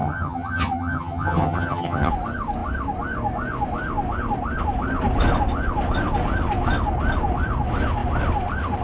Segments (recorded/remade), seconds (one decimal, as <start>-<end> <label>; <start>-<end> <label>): 0.0-2.1 remade; 2.1-8.8 recorded